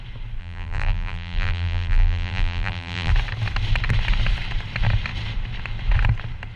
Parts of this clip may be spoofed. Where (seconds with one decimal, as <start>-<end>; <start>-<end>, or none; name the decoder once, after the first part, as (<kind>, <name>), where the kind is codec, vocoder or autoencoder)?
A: 0.4-3.1 (vocoder, BigVGAN v2)